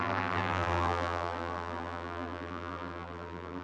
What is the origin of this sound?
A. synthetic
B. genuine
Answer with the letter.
A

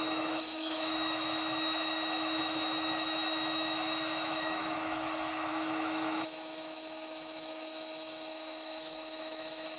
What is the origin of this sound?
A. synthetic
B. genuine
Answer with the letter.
A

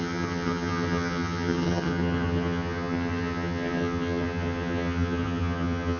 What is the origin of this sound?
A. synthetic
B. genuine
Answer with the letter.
A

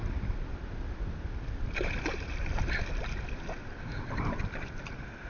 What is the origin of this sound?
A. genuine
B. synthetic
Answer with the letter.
A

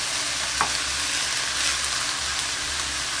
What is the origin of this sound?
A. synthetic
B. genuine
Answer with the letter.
B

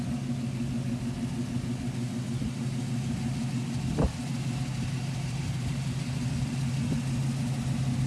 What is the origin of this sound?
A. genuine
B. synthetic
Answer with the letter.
A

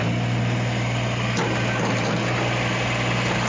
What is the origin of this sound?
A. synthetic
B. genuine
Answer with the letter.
B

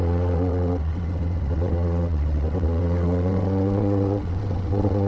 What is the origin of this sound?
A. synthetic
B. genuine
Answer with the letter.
A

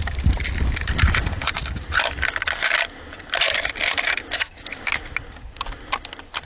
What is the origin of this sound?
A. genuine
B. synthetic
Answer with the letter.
A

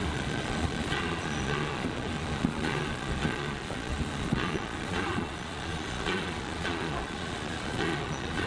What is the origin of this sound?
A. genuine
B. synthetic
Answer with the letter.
B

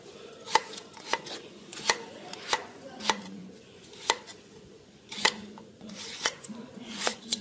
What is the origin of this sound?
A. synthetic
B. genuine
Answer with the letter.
A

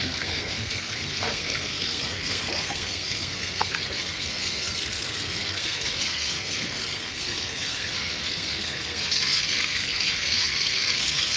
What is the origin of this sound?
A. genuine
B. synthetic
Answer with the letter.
B